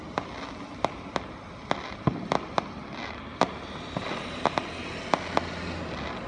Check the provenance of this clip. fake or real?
real